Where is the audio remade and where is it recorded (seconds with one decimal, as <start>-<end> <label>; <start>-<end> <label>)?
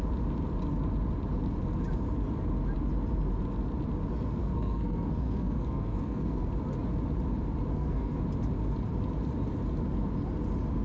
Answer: 0.0-4.4 recorded; 4.4-6.5 remade; 6.5-7.7 recorded; 7.7-8.2 remade; 8.2-10.8 recorded